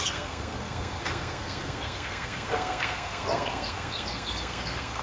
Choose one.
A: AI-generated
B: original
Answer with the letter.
A